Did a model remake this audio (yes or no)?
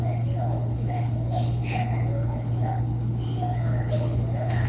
yes